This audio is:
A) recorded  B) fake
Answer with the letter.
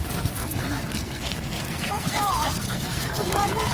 B